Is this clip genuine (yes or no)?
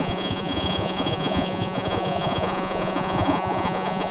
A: no